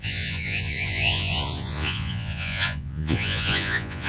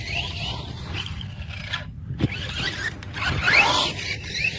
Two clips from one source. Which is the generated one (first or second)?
first